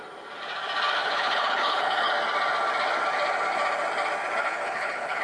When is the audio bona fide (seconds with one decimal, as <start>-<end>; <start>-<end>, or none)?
0.0-1.0; 2.1-4.4